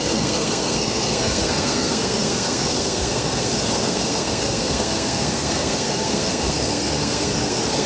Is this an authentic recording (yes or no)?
no